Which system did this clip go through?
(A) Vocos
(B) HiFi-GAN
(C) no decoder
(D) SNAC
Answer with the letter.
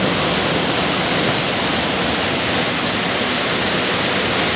C